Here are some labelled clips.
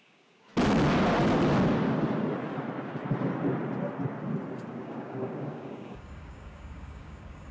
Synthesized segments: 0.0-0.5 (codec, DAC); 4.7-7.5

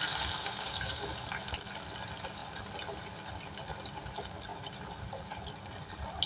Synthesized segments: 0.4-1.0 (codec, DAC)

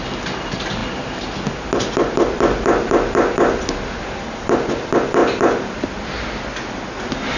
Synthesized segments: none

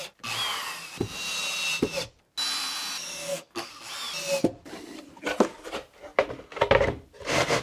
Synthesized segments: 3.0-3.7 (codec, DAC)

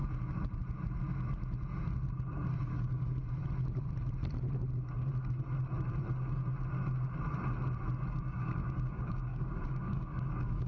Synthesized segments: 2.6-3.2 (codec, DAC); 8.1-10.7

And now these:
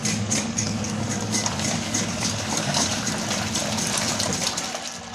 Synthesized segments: 0.0-3.1 (codec, DAC)

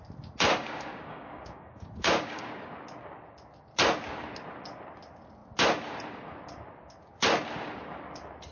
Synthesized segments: 0.5-2.7 (codec, DAC)